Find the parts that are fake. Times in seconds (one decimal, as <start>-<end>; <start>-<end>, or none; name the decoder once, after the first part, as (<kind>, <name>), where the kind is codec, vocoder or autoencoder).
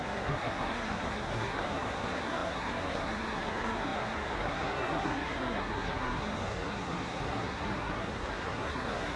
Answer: 0.0-9.2 (codec, SNAC)